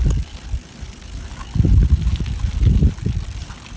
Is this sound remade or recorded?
recorded